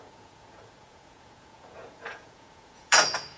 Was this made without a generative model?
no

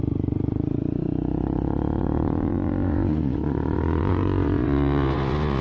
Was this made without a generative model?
no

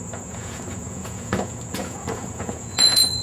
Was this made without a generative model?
no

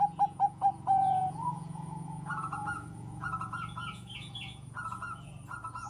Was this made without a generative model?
no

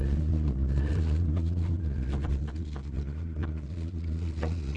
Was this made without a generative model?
no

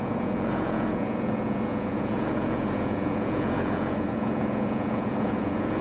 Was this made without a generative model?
no